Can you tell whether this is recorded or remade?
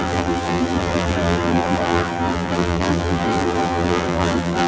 remade